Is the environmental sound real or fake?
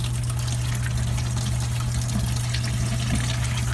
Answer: real